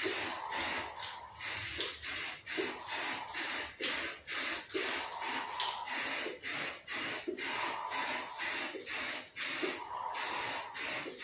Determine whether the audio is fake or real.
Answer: real